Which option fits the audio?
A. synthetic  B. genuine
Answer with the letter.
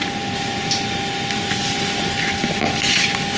B